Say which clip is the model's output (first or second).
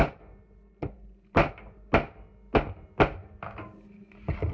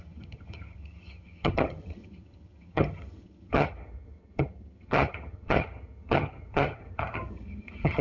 second